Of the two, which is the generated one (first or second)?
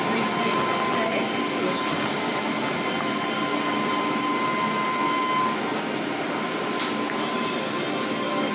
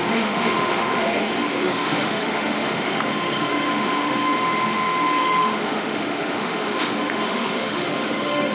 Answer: second